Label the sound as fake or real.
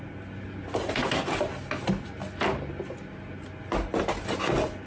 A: real